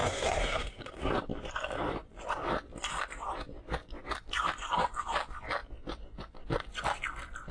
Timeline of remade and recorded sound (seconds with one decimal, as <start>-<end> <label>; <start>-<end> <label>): 0.0-1.1 remade; 1.1-7.5 recorded